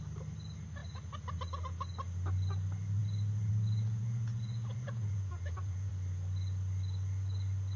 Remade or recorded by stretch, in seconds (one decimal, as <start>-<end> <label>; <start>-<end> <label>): 0.0-4.0 recorded; 4.0-5.9 remade; 5.9-7.8 recorded